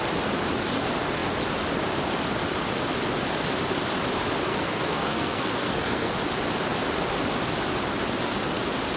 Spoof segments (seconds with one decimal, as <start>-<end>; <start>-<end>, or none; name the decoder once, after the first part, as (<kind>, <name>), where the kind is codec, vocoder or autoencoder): 4.5-6.1 (codec, SNAC)